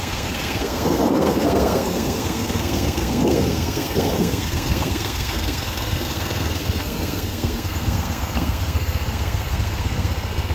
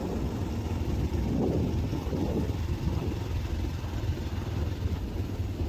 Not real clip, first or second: first